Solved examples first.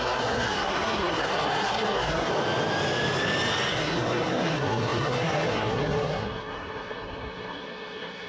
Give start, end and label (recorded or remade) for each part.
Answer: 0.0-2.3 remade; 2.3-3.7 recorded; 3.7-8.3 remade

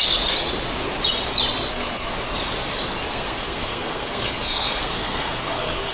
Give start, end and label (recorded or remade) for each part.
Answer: 0.0-1.7 recorded; 1.7-2.1 remade; 2.1-3.1 recorded; 3.1-5.9 remade

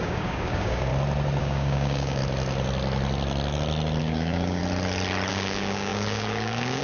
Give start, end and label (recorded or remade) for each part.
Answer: 0.0-0.9 remade; 0.9-1.4 recorded; 1.4-2.2 remade; 2.2-4.0 recorded; 4.0-4.6 remade; 4.6-5.3 recorded; 5.3-6.8 remade

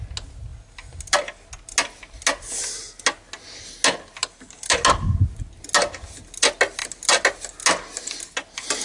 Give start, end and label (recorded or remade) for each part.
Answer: 0.0-8.8 recorded

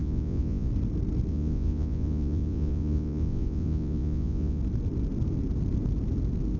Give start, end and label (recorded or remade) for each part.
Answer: 0.0-0.7 remade; 0.7-1.3 recorded; 1.3-4.6 remade; 4.6-6.6 recorded

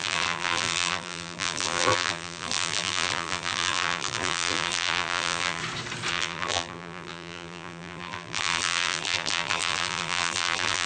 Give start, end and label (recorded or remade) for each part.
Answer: 0.0-5.6 remade; 5.6-6.1 recorded; 6.1-10.9 remade